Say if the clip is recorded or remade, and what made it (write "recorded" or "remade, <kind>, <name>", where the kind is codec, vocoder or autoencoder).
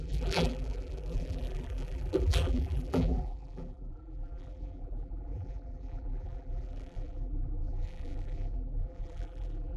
remade, vocoder, BigVGAN v2